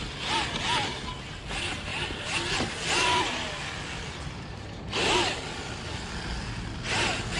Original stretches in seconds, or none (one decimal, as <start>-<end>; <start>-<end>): 0.0-7.4